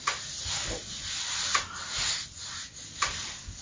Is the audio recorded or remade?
recorded